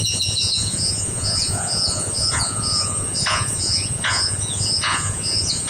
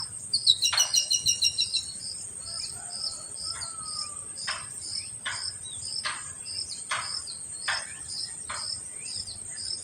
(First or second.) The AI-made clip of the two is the first